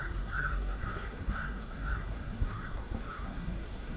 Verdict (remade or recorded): remade